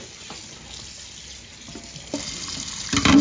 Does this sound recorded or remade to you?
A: recorded